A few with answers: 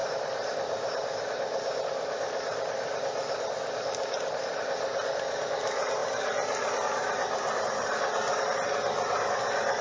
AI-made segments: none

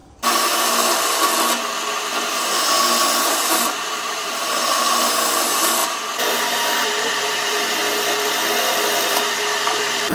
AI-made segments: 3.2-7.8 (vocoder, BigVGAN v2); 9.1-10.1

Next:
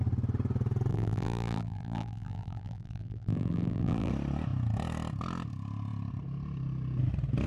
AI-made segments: 0.9-4.1 (vocoder, BigVGAN v2)

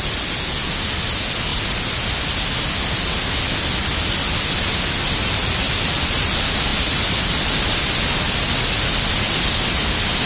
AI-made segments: none

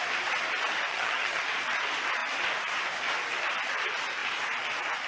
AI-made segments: 0.9-1.4 (vocoder, HiFi-GAN)

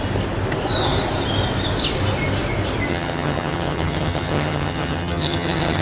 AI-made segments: 2.9-5.8 (vocoder, HiFi-GAN)

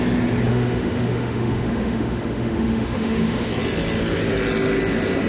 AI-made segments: 0.5-3.5 (autoencoder, DAC-VAE)